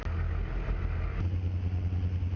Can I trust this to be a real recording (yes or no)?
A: yes